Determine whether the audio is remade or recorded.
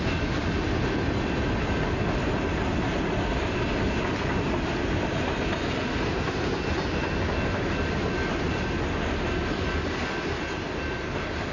recorded